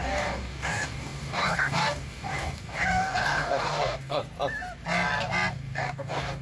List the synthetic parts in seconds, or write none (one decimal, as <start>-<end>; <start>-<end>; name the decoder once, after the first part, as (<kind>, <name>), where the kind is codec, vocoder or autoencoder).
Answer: 0.0-4.2 (codec, DAC); 5.5-6.4